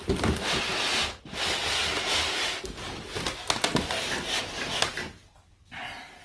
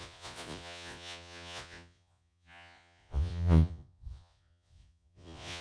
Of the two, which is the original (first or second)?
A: first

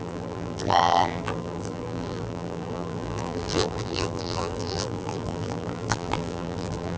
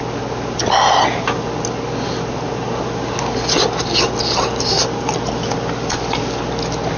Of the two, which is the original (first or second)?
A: second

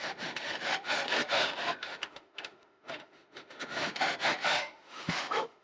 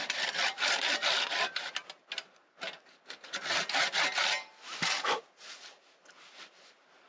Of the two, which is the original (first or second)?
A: second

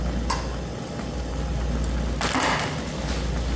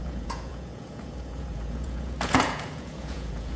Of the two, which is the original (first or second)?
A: first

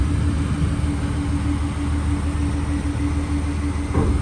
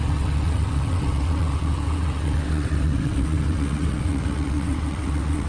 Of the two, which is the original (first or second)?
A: first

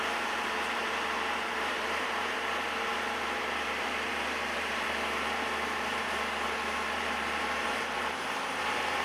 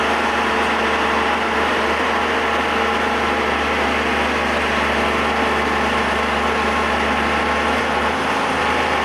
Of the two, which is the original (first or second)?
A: second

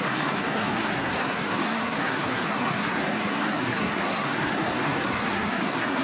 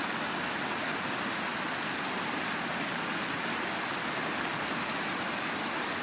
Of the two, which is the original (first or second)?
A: second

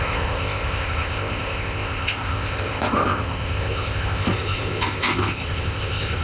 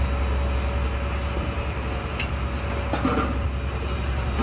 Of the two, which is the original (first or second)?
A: second